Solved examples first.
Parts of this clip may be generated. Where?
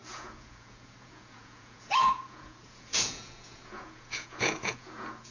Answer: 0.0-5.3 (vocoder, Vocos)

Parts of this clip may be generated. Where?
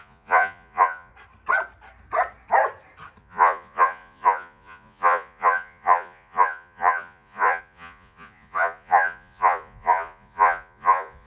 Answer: 0.0-1.1 (vocoder, Vocos); 3.2-11.3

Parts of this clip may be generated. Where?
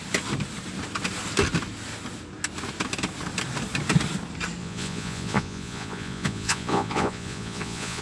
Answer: 4.6-8.0 (vocoder, Vocos)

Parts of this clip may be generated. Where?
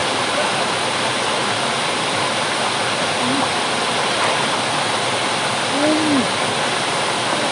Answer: none